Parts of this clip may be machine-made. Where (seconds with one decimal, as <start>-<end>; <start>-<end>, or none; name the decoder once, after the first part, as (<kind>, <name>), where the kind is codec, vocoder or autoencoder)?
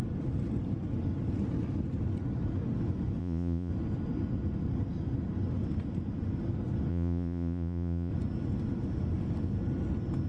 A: 3.2-3.7 (vocoder, Vocos); 6.9-8.1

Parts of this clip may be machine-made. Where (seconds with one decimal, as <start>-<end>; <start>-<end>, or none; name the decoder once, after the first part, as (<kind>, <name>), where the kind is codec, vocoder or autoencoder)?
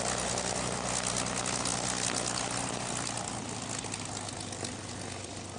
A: none